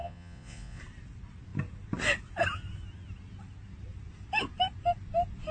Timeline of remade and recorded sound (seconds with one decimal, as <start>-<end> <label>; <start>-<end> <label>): 0.0-0.8 remade; 0.8-5.5 recorded